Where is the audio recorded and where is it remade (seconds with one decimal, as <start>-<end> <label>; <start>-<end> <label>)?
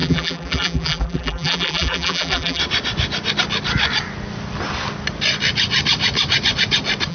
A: 0.0-2.6 remade; 2.6-7.1 recorded